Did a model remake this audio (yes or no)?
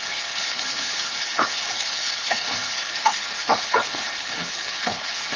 yes